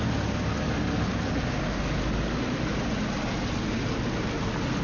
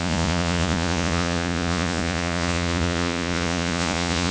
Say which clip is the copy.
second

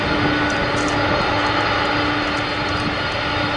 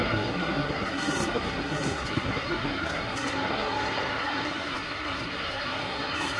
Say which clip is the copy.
second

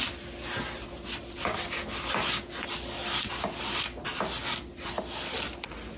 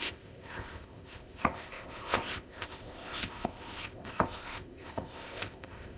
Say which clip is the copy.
second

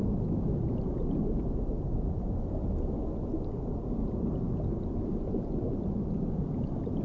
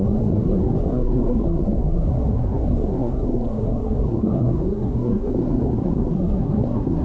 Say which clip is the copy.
second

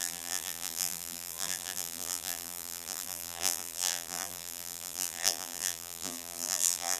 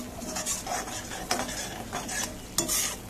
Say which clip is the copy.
first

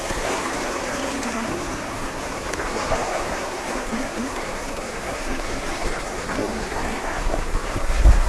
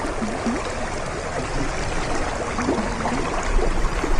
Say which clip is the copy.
first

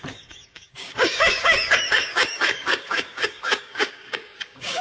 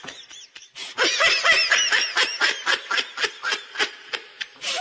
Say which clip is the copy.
first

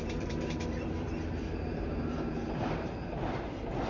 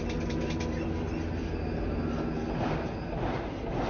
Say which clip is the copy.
first